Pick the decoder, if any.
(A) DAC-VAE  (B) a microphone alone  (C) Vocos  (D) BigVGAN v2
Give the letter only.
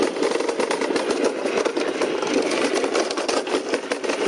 B